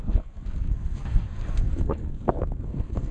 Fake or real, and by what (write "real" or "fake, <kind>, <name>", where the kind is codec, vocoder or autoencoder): fake, codec, SNAC